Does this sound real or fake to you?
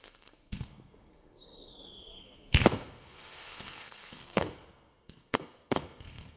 fake